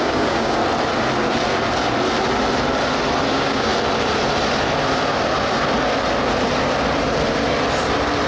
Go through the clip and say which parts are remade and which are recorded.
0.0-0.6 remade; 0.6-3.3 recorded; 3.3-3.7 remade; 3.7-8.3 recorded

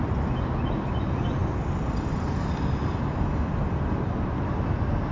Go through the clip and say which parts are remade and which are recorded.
0.0-5.1 recorded

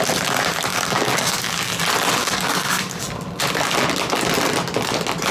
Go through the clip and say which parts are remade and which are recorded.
0.0-0.7 recorded; 0.7-1.7 remade; 1.7-2.2 recorded; 2.2-3.0 remade; 3.0-5.3 recorded

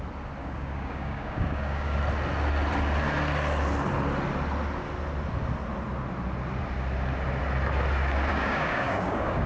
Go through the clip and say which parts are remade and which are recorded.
0.0-0.4 recorded; 0.4-2.0 remade; 2.0-8.3 recorded; 8.3-9.5 remade

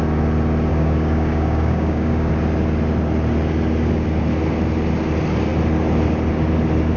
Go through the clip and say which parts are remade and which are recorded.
0.0-0.7 recorded; 0.7-2.3 remade; 2.3-7.0 recorded